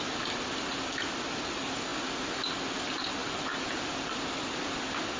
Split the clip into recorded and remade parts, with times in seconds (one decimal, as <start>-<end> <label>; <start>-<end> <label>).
0.0-5.2 recorded